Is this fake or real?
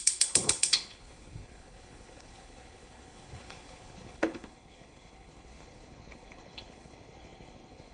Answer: fake